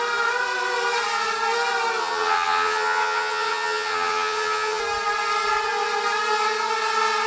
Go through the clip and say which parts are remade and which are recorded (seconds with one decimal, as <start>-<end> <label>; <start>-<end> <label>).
0.0-2.0 recorded; 2.0-4.8 remade; 4.8-7.3 recorded